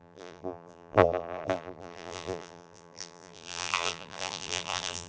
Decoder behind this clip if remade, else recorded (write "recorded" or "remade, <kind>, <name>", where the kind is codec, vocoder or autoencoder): remade, vocoder, BigVGAN v2